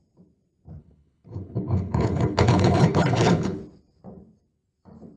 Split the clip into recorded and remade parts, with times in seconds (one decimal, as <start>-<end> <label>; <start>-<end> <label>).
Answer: 0.0-0.8 recorded; 0.8-3.6 remade; 3.6-5.2 recorded